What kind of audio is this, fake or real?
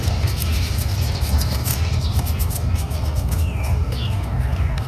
fake